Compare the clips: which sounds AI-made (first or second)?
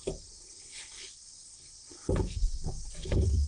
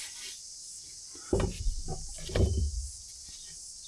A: first